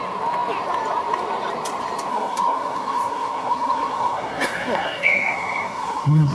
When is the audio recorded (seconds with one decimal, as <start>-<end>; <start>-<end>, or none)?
0.0-2.1